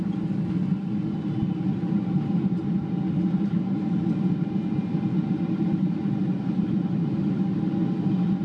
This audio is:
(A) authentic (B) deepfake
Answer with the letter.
A